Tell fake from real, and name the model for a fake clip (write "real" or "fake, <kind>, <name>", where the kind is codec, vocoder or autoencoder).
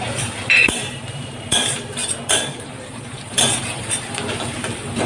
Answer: fake, vocoder, BigVGAN v2